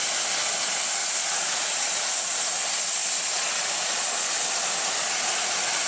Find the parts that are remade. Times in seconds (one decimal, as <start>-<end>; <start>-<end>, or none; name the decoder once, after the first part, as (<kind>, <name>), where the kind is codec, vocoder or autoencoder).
1.0-2.3 (vocoder, Vocos)